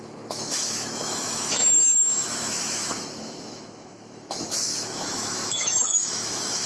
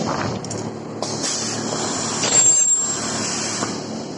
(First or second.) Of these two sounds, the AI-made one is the first